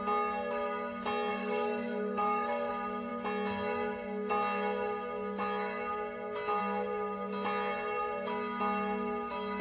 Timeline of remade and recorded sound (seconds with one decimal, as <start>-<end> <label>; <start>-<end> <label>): 0.0-1.3 recorded; 1.3-2.7 remade; 2.7-9.6 recorded